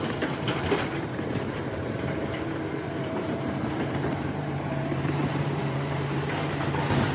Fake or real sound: fake